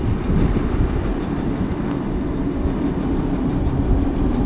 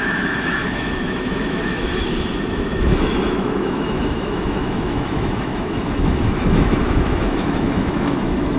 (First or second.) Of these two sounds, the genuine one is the first